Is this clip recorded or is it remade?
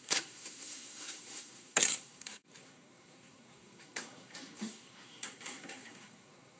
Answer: remade